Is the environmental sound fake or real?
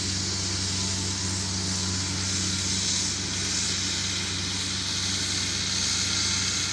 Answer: real